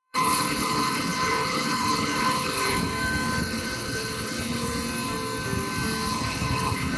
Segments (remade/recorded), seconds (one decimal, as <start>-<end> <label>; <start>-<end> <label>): 0.0-2.9 remade; 2.9-3.4 recorded; 3.4-4.7 remade; 4.7-6.1 recorded; 6.1-7.0 remade

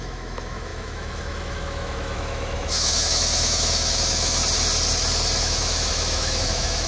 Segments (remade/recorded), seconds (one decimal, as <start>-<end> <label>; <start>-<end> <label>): 0.0-4.4 remade; 4.4-5.4 recorded; 5.4-6.9 remade

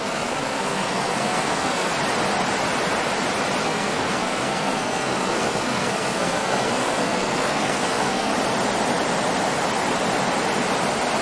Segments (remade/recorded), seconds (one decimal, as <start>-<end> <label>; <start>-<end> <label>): 0.0-1.9 remade; 1.9-3.6 recorded; 3.6-8.3 remade; 8.3-11.2 recorded